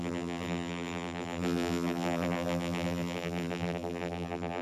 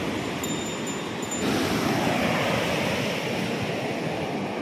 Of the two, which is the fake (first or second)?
first